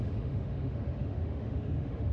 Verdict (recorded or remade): remade